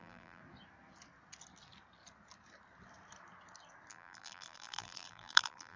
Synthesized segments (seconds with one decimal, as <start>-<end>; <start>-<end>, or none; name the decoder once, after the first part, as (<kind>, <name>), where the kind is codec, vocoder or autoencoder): 0.0-0.4 (vocoder, BigVGAN v2); 3.9-5.8